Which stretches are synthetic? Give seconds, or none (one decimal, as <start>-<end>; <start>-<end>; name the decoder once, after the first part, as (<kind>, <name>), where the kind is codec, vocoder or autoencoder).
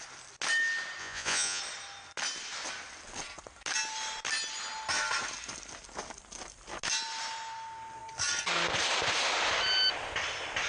1.0-1.6 (vocoder, Vocos)